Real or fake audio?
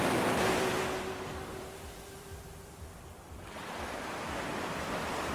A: real